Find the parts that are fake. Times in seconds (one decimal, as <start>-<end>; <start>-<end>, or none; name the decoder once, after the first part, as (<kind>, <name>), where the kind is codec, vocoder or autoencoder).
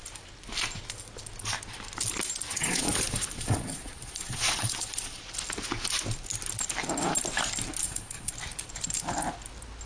2.5-5.2 (vocoder, Vocos); 7.8-8.3